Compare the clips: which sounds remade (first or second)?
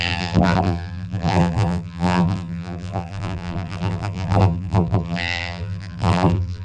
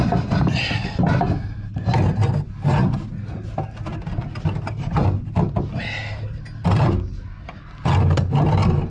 first